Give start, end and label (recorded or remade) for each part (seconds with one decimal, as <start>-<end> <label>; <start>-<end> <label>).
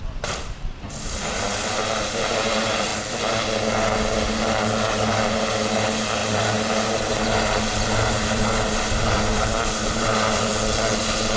0.0-2.9 remade; 2.9-4.9 recorded; 4.9-10.5 remade; 10.5-11.0 recorded; 11.0-11.4 remade